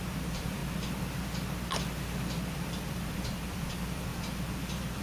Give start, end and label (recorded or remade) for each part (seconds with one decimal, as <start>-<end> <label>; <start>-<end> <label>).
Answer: 0.0-0.6 remade; 0.6-2.5 recorded; 2.5-5.0 remade

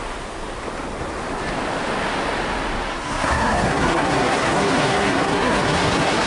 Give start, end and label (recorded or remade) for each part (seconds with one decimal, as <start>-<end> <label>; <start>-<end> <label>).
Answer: 0.0-2.9 recorded; 2.9-6.3 remade

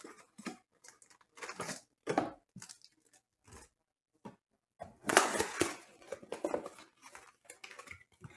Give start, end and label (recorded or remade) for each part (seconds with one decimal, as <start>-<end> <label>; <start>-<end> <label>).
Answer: 0.0-5.0 recorded; 5.0-6.4 remade; 6.4-8.4 recorded